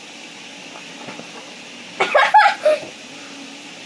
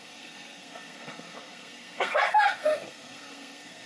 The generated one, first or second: second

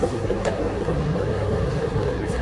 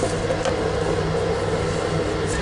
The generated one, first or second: first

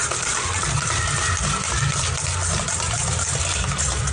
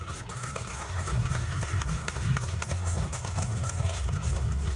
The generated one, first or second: second